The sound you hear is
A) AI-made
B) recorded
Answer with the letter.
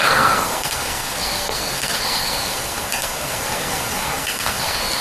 A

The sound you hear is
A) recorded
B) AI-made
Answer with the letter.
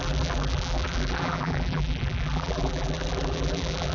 B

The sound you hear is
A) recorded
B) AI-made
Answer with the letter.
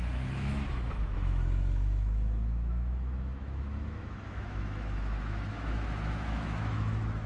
B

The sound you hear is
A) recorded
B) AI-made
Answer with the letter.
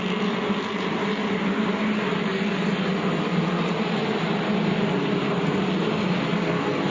A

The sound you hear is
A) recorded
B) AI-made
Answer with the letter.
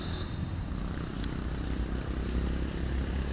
A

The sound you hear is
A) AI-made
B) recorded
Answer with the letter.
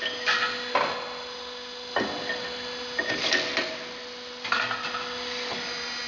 B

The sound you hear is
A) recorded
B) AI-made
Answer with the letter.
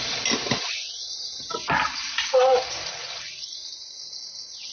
A